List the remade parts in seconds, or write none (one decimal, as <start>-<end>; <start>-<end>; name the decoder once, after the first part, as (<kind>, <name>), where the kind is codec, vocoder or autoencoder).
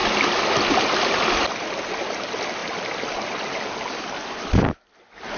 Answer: none